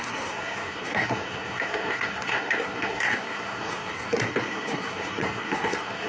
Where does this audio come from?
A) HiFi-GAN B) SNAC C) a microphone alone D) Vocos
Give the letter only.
B